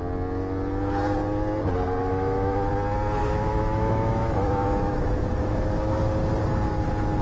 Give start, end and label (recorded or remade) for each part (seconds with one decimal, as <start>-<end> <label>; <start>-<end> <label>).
0.0-2.0 recorded; 2.0-2.7 remade; 2.7-3.2 recorded; 3.2-6.0 remade; 6.0-7.2 recorded